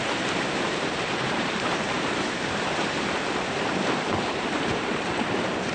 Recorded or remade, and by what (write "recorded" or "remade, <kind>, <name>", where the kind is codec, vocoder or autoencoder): remade, vocoder, BigVGAN v2